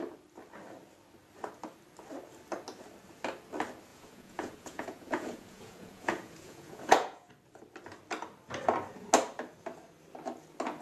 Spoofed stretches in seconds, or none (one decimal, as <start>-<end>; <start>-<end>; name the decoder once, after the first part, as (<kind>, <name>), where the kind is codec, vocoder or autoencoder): 3.9-7.3 (vocoder, Vocos)